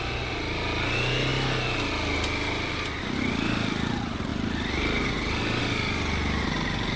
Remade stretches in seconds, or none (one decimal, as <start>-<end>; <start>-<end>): none